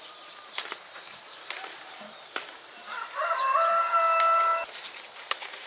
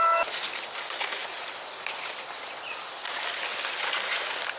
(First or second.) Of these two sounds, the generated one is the first